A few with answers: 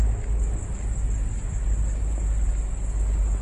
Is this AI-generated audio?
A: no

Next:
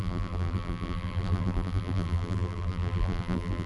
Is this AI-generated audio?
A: yes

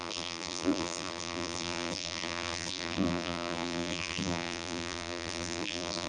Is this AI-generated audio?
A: yes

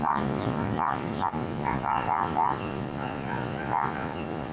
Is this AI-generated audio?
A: yes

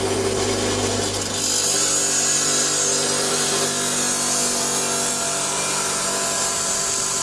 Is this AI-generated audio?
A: no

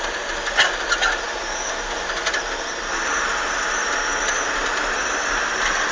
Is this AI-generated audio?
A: no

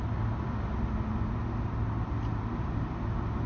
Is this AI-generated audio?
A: no